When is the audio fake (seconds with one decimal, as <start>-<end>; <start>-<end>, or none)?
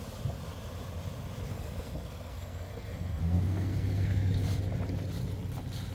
1.5-4.6